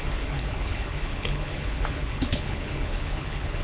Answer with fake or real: fake